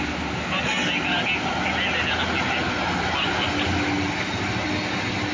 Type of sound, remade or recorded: recorded